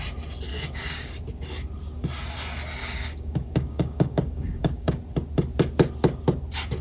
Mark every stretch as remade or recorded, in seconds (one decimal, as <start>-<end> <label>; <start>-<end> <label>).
0.0-0.5 recorded; 0.5-1.2 remade; 1.2-2.8 recorded; 2.8-5.0 remade; 5.0-6.8 recorded